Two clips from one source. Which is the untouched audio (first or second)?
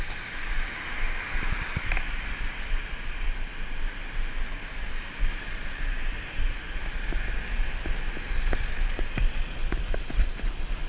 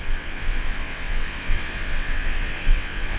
first